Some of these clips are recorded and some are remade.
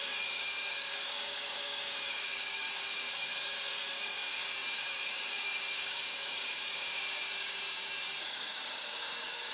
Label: remade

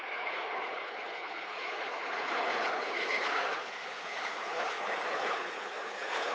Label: remade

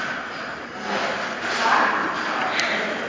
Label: recorded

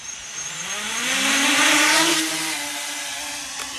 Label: recorded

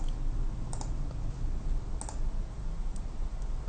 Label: recorded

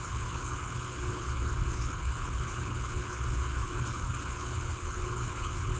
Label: remade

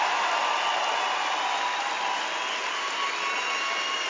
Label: recorded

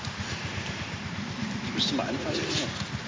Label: recorded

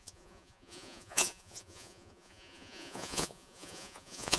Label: remade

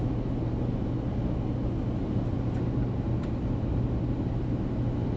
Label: recorded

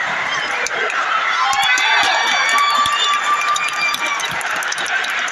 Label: remade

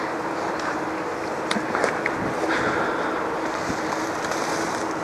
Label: recorded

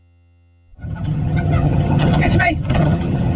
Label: remade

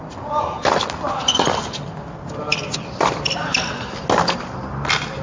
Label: recorded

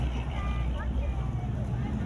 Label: remade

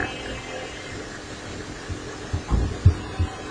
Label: recorded